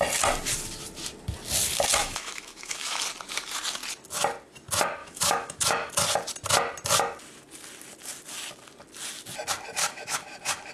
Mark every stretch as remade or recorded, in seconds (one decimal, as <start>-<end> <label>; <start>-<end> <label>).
0.0-2.0 recorded; 2.0-3.0 remade; 3.0-5.0 recorded; 5.0-5.9 remade; 5.9-9.8 recorded; 9.8-10.7 remade